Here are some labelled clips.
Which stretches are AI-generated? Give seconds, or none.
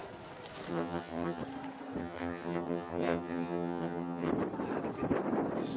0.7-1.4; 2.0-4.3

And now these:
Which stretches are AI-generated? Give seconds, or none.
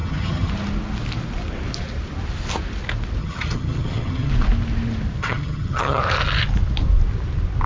0.0-0.5; 3.2-4.3; 5.2-6.0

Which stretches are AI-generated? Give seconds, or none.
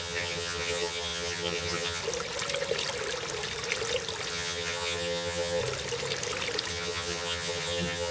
0.0-2.0; 4.3-5.6; 6.7-8.1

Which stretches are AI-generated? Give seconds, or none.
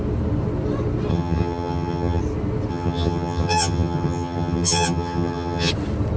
1.1-2.2; 2.7-5.7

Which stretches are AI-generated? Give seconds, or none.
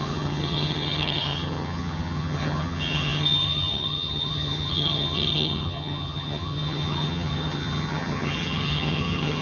0.0-9.4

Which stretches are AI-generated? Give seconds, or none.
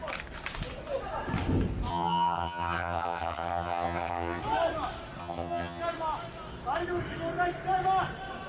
1.9-4.4; 5.2-5.8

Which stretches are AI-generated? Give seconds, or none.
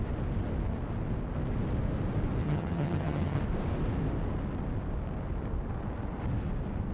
2.4-3.4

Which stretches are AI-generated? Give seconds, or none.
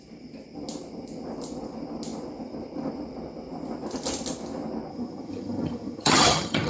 4.9-6.7